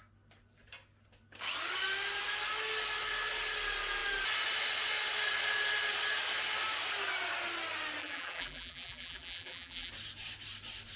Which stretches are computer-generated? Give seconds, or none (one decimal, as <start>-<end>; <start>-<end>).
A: 8.0-9.9